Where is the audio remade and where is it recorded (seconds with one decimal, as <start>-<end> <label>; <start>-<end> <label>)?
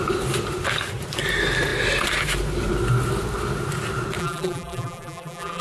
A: 0.0-4.2 recorded; 4.2-5.6 remade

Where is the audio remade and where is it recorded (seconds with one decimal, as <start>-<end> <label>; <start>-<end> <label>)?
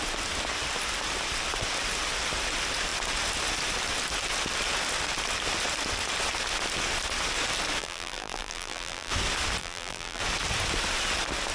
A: 0.0-7.8 recorded; 7.8-9.1 remade; 9.1-9.6 recorded; 9.6-10.2 remade; 10.2-11.5 recorded